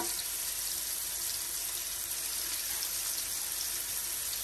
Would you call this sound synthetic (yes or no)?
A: no